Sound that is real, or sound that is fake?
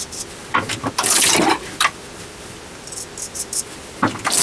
fake